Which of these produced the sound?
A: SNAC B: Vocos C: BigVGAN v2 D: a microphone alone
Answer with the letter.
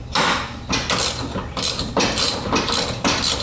D